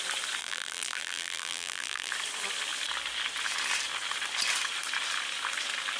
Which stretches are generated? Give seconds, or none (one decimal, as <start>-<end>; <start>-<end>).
0.4-2.1